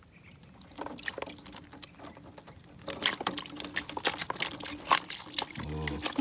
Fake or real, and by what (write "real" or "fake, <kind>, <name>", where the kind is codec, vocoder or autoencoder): real